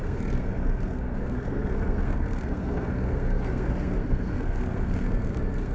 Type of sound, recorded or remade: remade